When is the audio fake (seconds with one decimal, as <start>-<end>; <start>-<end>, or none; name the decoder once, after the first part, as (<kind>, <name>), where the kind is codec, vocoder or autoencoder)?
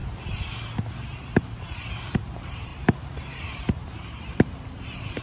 0.9-2.7 (vocoder, BigVGAN v2); 3.5-5.2